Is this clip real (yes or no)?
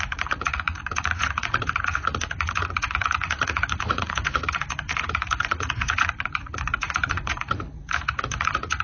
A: no